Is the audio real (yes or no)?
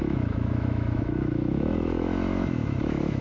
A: no